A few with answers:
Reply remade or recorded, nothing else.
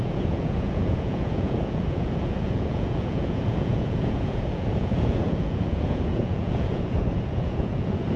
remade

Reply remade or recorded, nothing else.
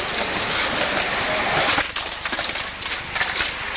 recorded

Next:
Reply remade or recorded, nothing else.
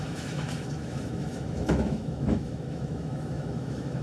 remade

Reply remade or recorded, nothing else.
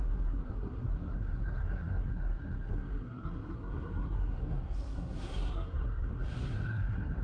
remade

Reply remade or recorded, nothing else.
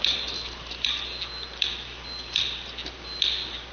recorded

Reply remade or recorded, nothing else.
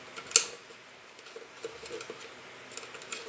recorded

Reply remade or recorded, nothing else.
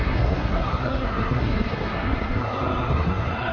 remade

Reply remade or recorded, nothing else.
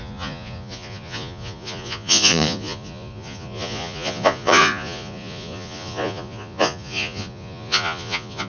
remade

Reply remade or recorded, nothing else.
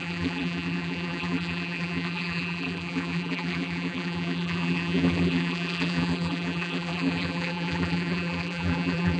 remade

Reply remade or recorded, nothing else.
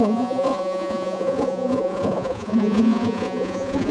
remade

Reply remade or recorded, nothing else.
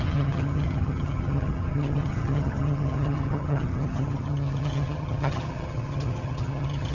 remade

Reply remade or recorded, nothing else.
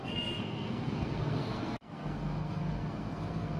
remade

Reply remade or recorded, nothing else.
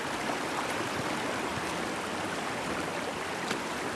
recorded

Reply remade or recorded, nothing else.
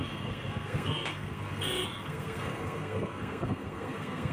remade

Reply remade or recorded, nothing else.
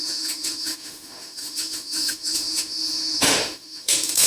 remade